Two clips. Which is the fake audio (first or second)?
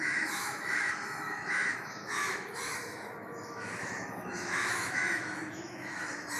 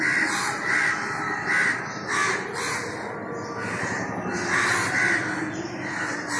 first